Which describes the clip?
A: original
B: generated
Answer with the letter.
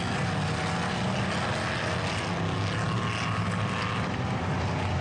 A